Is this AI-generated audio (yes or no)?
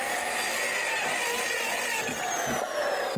no